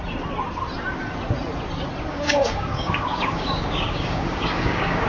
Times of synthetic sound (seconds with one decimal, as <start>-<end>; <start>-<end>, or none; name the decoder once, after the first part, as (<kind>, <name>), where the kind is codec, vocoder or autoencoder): 2.1-5.1 (codec, DAC)